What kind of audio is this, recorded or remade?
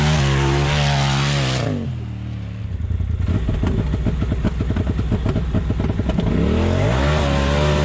recorded